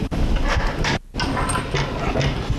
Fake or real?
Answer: real